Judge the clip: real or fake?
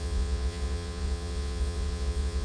fake